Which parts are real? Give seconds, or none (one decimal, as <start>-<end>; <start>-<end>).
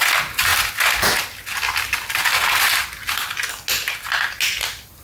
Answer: 0.0-5.0